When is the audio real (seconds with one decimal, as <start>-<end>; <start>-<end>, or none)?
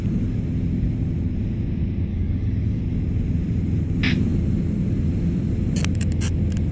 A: 0.0-2.1; 2.8-6.7